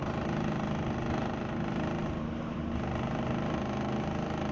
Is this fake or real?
real